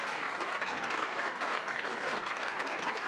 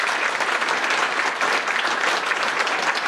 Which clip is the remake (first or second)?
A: first